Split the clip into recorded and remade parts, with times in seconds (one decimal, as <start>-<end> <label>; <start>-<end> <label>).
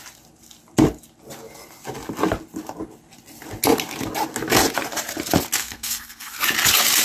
0.0-5.6 recorded; 5.6-6.4 remade; 6.4-7.0 recorded